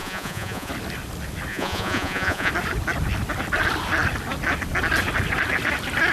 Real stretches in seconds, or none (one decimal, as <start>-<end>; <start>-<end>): 0.7-1.5; 2.5-6.1